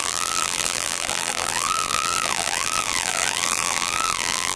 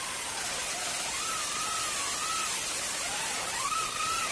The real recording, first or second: second